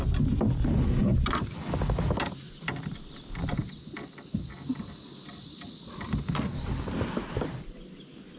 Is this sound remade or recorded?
recorded